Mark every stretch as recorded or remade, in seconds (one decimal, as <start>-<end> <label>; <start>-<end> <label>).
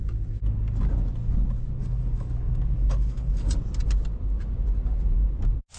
0.0-1.8 recorded; 1.8-3.5 remade; 3.5-5.8 recorded